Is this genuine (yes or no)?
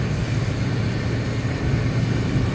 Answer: yes